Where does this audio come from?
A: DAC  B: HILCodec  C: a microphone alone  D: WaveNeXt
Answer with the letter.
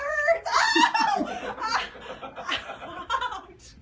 C